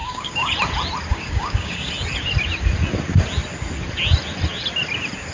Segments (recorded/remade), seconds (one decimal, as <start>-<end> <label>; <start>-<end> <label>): 0.0-0.5 remade; 0.5-1.1 recorded; 1.1-1.9 remade; 1.9-5.3 recorded